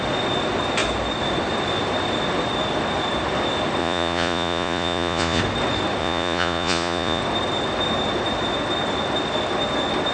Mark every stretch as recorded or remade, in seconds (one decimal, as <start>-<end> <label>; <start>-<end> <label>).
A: 0.0-3.8 recorded; 3.8-5.4 remade; 5.4-6.0 recorded; 6.0-7.2 remade; 7.2-10.1 recorded